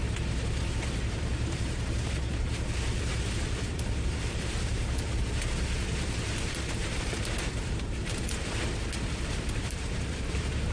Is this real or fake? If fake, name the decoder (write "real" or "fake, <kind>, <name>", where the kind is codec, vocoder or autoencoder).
fake, vocoder, BigVGAN v2